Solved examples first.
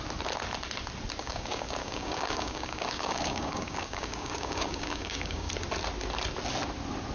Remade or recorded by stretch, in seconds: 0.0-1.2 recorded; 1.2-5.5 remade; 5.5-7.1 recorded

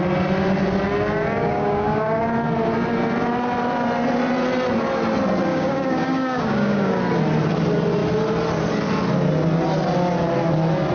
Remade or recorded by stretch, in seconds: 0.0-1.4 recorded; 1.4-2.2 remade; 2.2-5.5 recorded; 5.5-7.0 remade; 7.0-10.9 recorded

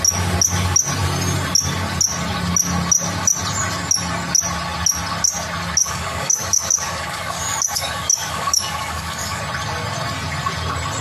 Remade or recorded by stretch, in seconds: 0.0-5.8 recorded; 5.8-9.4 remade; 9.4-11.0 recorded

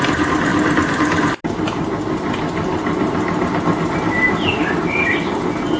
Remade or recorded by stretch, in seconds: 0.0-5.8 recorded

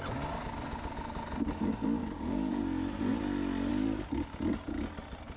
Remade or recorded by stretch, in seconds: 0.0-2.0 recorded; 2.0-2.6 remade; 2.6-5.4 recorded

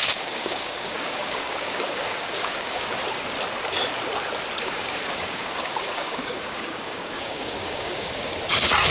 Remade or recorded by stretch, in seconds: 0.0-3.0 remade; 3.0-4.6 recorded; 4.6-8.3 remade; 8.3-8.9 recorded

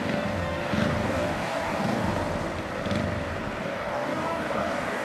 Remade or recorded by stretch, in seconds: 0.0-2.1 remade; 2.1-3.6 recorded; 3.6-5.0 remade

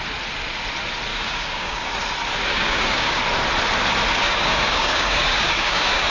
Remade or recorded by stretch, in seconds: 0.0-1.1 recorded; 1.1-1.9 remade; 1.9-2.5 recorded; 2.5-3.2 remade; 3.2-4.2 recorded; 4.2-6.1 remade